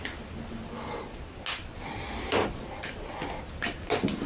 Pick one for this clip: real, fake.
real